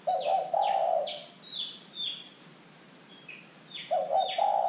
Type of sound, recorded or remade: recorded